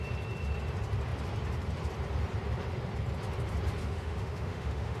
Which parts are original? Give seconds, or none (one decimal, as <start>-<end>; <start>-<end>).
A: 0.0-3.8